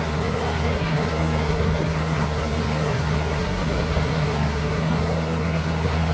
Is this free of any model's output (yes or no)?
no